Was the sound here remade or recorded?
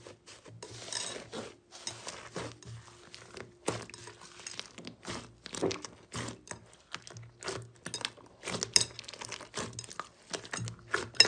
recorded